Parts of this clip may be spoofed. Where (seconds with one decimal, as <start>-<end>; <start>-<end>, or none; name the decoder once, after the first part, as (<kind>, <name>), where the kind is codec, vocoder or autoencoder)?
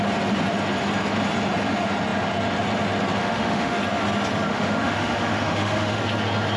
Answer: 3.2-3.8 (autoencoder, DAC-VAE); 4.5-6.0